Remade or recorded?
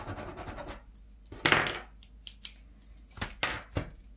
recorded